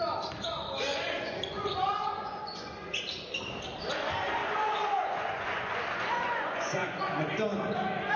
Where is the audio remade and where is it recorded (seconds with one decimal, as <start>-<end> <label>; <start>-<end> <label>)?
0.0-0.9 recorded; 0.9-3.0 remade; 3.0-4.4 recorded; 4.4-7.3 remade; 7.3-8.2 recorded